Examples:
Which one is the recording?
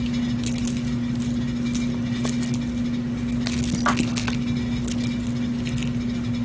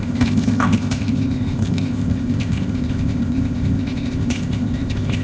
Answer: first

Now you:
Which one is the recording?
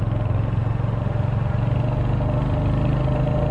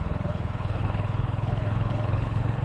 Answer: first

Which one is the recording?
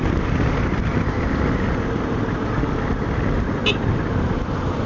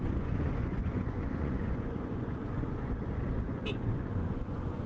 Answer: first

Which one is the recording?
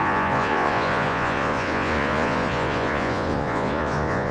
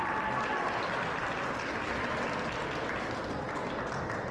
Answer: second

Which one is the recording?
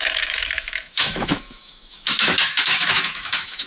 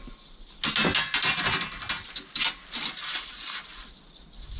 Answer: second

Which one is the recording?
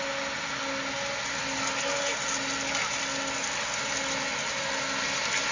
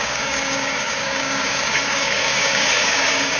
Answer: first